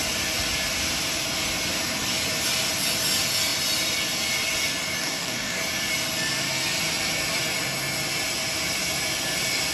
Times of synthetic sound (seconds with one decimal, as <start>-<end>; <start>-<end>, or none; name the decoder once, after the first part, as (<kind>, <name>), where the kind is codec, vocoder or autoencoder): 5.0-5.6 (codec, DAC)